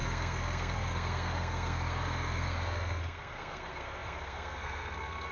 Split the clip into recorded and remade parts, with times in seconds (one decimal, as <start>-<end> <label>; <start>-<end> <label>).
0.0-5.3 remade

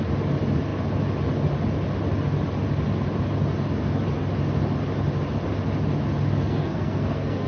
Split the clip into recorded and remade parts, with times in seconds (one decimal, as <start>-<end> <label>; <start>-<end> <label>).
0.0-6.4 recorded; 6.4-7.5 remade

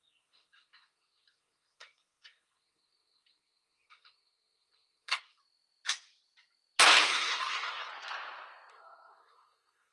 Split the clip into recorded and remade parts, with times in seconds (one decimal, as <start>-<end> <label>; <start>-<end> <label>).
0.0-5.4 remade; 5.4-7.1 recorded; 7.1-7.9 remade; 7.9-8.7 recorded; 8.7-9.9 remade

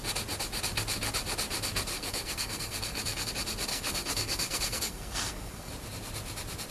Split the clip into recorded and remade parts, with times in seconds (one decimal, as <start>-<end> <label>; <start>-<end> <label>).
0.0-1.9 recorded; 1.9-3.3 remade; 3.3-3.7 recorded; 3.7-5.7 remade; 5.7-6.7 recorded

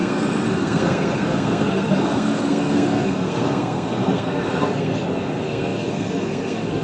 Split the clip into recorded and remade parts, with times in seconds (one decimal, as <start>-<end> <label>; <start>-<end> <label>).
0.0-6.8 remade

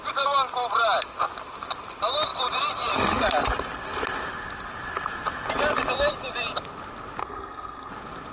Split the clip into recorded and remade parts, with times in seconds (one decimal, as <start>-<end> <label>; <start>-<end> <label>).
0.0-7.2 recorded; 7.2-7.9 remade; 7.9-8.3 recorded